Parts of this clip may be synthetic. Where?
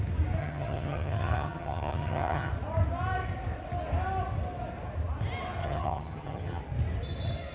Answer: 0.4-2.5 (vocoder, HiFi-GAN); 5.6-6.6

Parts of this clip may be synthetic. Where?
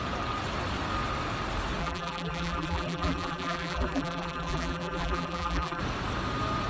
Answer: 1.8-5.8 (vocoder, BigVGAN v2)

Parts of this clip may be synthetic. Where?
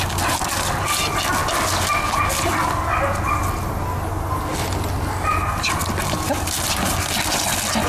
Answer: none